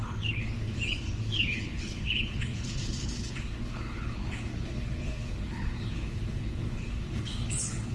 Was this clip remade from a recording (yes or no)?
yes